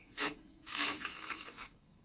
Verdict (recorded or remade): remade